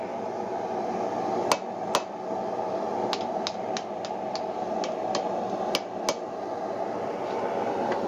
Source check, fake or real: real